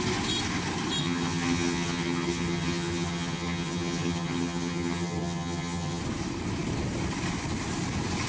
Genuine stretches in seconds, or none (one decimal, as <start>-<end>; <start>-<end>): 0.0-1.0; 6.0-8.3